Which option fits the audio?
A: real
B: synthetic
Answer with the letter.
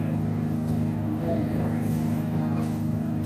B